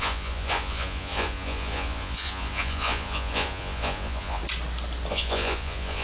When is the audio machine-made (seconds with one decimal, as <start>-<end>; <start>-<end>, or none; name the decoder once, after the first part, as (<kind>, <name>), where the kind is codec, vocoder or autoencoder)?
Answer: 0.0-4.4 (vocoder, Vocos); 5.1-6.0

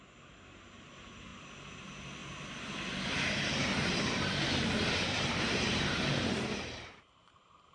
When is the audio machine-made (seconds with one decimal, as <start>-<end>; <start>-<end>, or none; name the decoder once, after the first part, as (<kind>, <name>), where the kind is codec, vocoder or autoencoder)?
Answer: 0.0-1.3 (vocoder, BigVGAN v2); 1.8-2.2; 4.6-7.7